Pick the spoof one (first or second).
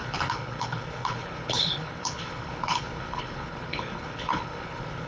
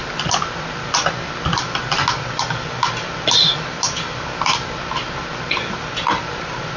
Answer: first